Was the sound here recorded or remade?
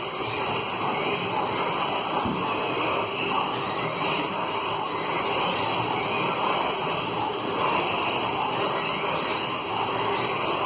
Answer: recorded